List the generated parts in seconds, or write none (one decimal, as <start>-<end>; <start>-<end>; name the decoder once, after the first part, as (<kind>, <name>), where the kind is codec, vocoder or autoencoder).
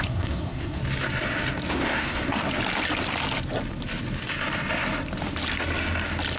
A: 0.0-0.8 (codec, SNAC); 1.7-2.4